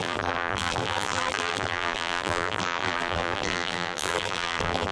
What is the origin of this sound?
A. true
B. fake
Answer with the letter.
B